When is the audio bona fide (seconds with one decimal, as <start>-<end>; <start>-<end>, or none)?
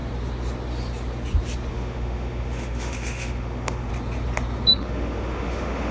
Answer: 0.0-1.7; 3.9-4.7